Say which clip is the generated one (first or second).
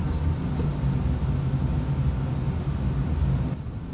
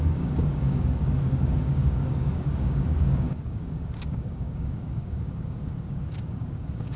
second